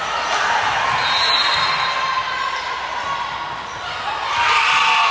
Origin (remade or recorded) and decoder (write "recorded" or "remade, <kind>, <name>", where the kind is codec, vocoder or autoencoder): recorded